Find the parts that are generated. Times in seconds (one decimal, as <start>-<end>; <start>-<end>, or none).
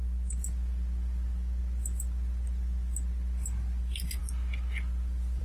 none